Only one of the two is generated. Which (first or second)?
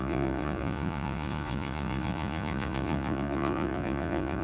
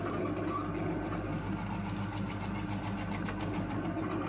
first